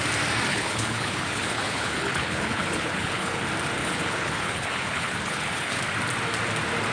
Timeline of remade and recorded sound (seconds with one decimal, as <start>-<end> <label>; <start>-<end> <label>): 0.0-0.5 recorded; 0.5-3.4 remade; 3.4-3.8 recorded; 3.8-5.8 remade; 5.8-6.9 recorded